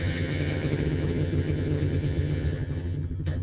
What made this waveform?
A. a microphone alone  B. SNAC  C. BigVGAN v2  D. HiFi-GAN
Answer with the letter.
D